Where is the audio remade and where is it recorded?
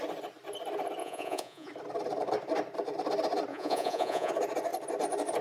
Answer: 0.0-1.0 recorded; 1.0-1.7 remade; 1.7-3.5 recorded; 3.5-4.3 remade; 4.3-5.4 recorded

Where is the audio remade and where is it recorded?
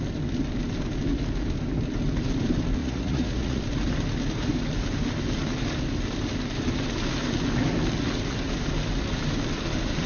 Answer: 0.0-2.8 recorded; 2.8-3.6 remade; 3.6-10.1 recorded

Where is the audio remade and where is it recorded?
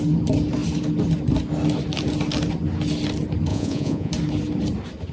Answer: 0.0-3.5 recorded; 3.5-4.1 remade; 4.1-5.1 recorded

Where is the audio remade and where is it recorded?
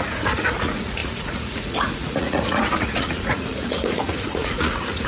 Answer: 0.0-5.1 remade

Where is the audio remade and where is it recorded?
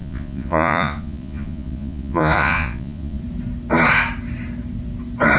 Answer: 0.0-3.2 remade; 3.2-5.4 recorded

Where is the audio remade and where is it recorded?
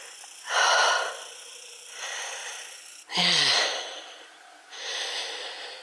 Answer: 0.0-5.8 recorded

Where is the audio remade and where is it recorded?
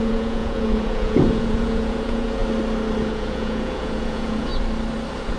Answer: 0.0-2.4 remade; 2.4-3.1 recorded; 3.1-4.5 remade; 4.5-5.4 recorded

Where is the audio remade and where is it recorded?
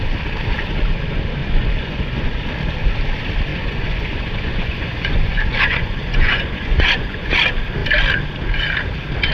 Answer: 0.0-1.4 recorded; 1.4-2.4 remade; 2.4-3.5 recorded; 3.5-7.3 remade; 7.3-9.3 recorded